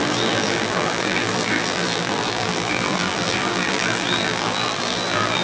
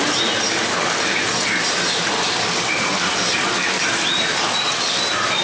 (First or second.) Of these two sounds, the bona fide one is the second